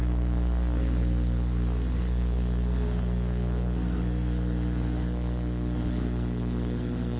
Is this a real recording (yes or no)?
no